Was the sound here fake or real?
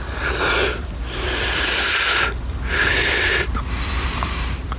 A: fake